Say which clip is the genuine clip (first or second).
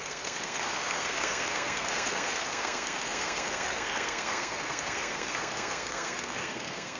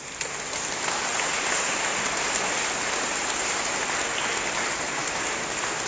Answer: second